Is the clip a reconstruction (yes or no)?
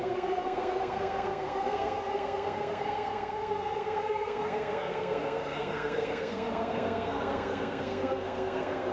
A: yes